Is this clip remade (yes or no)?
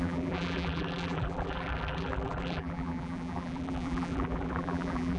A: yes